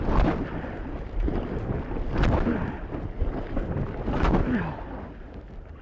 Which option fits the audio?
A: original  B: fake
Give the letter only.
A